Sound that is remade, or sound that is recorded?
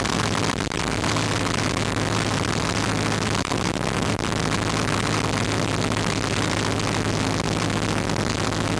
recorded